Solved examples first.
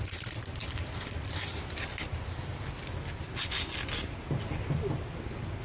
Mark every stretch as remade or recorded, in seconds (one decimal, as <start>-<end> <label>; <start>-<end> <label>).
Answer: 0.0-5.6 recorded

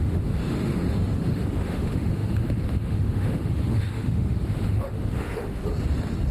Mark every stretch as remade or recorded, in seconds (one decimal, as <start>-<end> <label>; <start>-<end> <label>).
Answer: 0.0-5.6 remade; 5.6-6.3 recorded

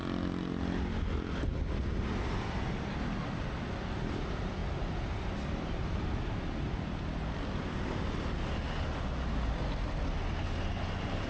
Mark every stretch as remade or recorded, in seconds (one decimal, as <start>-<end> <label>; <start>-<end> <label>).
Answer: 0.0-11.3 recorded